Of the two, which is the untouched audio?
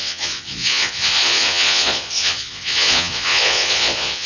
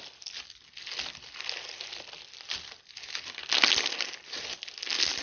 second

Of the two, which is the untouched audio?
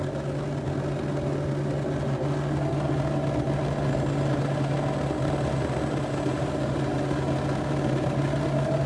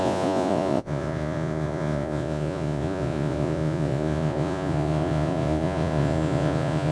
first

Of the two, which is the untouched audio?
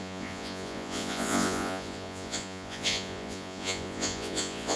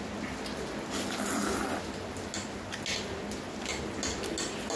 second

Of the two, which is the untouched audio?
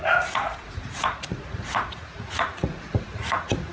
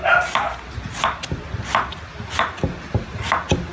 second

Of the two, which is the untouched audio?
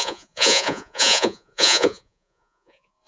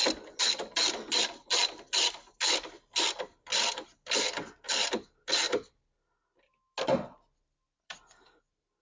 second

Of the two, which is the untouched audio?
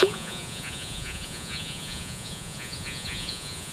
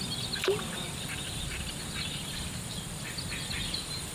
second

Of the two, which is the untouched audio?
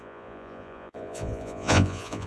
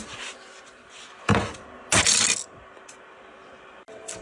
second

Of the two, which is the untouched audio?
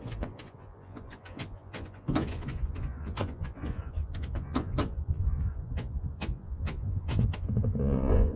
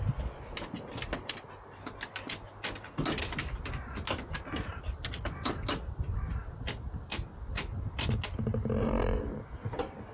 second